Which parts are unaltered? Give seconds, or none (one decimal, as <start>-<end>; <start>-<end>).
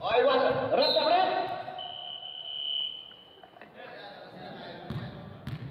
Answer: 0.0-5.7